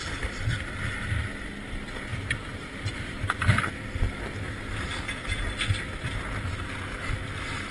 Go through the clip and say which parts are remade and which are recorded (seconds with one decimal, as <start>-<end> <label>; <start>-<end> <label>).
0.0-7.7 recorded